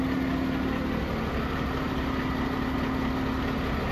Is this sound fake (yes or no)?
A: no